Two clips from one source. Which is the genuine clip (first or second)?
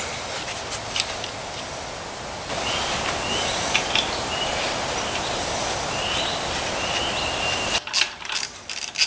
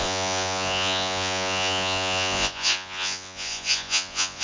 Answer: first